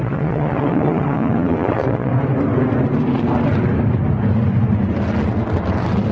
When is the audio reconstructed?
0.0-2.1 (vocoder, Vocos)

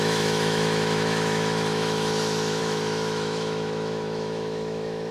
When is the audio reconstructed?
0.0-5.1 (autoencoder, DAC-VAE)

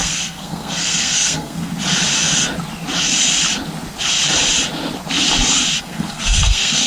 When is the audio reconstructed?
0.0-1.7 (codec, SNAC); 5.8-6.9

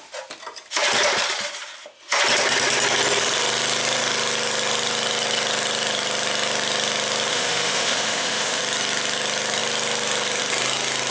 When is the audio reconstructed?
7.3-8.6 (autoencoder, DAC-VAE)

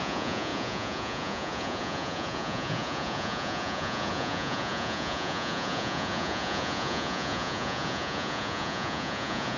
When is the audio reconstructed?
0.0-9.6 (vocoder, Vocos)

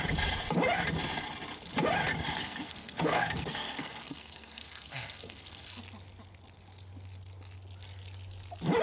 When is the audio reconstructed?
2.1-5.8 (codec, SNAC)

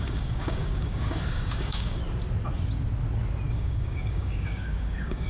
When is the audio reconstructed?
0.0-2.0 (codec, DAC); 3.5-5.3